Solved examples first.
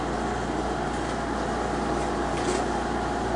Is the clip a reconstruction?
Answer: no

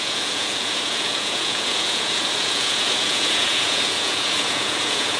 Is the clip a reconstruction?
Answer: yes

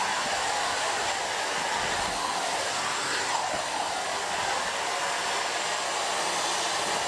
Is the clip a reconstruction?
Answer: no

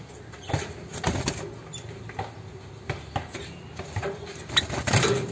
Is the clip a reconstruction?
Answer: no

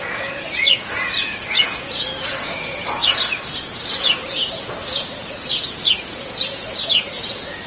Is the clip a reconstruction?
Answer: yes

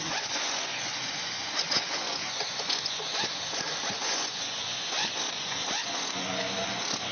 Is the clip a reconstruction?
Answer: yes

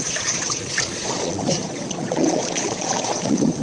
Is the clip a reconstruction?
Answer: yes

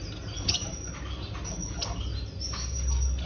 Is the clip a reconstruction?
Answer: no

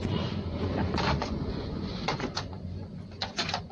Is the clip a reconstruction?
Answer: yes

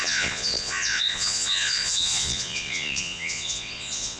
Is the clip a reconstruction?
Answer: yes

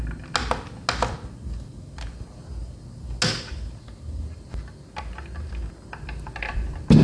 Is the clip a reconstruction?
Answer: no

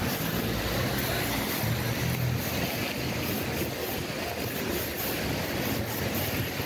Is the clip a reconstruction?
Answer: no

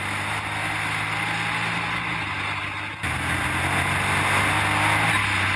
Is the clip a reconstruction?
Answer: no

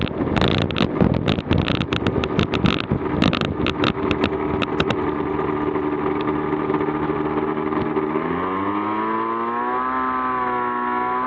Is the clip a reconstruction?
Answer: no